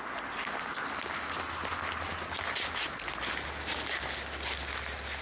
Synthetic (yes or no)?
no